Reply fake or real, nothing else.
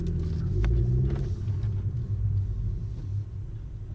real